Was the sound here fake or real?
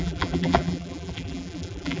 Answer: fake